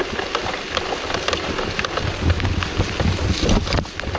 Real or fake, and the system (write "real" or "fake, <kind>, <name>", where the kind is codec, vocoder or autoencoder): real